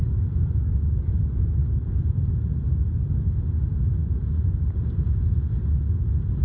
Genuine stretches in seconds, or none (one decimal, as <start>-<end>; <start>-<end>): 0.0-6.4